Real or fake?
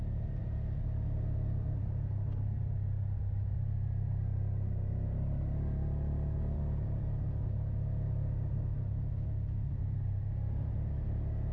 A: real